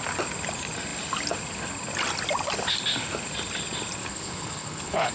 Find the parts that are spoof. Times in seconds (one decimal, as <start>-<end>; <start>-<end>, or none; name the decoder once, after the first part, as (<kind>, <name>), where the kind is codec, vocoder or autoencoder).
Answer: 4.0-5.1 (codec, HILCodec)